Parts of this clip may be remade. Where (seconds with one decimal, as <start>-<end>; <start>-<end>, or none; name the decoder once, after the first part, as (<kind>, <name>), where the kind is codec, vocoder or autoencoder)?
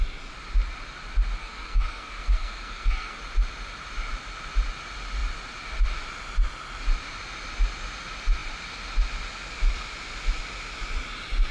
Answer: 1.4-3.2 (codec, SNAC)